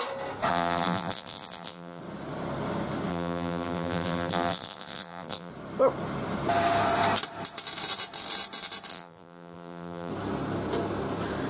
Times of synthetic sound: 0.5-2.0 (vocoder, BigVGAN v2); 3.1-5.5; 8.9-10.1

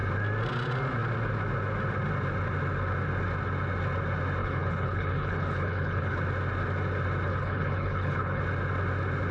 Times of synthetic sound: 4.4-6.2 (codec, HILCodec); 7.3-8.4

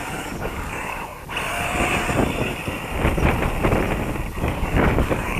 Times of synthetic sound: 0.0-1.2 (codec, DAC); 4.4-5.4